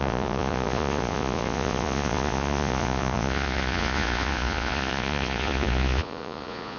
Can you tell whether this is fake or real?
fake